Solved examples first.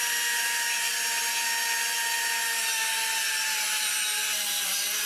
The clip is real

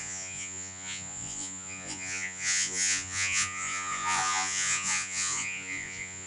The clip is fake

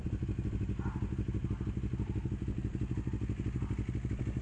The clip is real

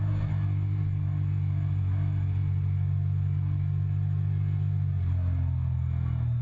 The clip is real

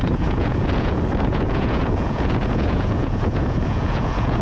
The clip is fake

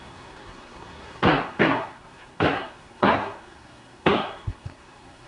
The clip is fake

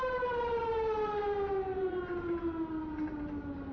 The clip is real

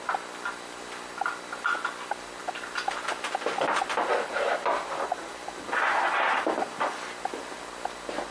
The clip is real